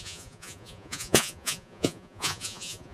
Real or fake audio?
fake